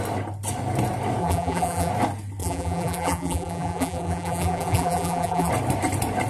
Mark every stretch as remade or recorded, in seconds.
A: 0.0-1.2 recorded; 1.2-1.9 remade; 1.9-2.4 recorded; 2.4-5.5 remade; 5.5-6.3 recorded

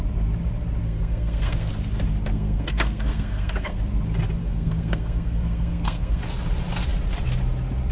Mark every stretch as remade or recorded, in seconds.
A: 0.0-0.8 recorded; 0.8-1.7 remade; 1.7-2.3 recorded; 2.3-3.8 remade; 3.8-4.4 recorded; 4.4-6.2 remade; 6.2-7.9 recorded

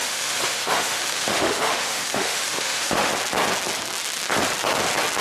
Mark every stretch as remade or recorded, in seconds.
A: 0.0-3.1 remade; 3.1-5.2 recorded